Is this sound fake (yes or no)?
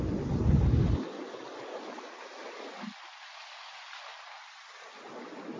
no